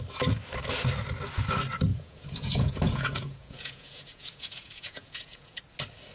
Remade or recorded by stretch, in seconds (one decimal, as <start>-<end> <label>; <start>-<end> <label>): 0.0-1.9 recorded; 1.9-5.6 remade; 5.6-6.1 recorded